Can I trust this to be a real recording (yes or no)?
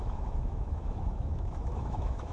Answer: no